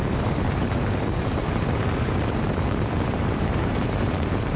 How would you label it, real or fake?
fake